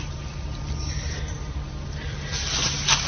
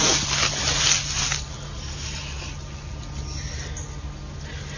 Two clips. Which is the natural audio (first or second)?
second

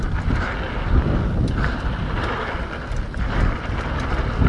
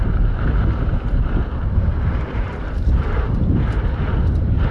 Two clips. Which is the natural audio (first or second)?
first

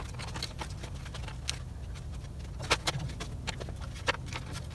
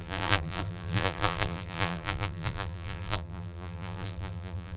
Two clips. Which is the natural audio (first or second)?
first